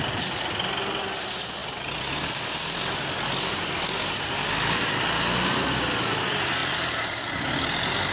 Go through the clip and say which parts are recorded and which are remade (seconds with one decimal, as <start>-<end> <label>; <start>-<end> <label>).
0.0-8.1 recorded